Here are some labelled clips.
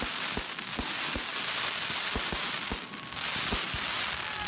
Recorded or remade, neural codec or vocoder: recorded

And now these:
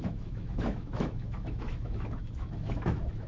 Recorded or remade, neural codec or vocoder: remade, autoencoder, DAC-VAE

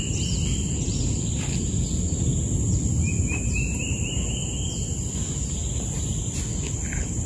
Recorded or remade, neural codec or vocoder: recorded